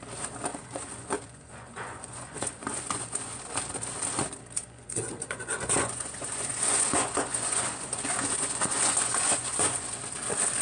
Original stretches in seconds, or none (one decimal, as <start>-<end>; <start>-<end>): 0.0-0.5; 3.4-4.6; 9.9-10.6